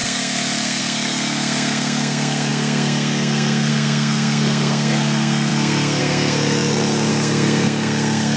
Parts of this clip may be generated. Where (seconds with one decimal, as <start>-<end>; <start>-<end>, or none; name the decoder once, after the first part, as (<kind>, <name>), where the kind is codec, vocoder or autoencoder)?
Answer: 0.0-8.4 (codec, SNAC)